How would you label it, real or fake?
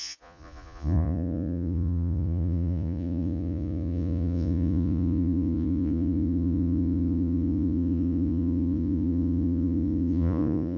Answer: fake